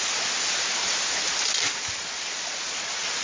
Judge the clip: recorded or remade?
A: recorded